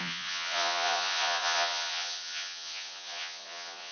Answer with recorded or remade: remade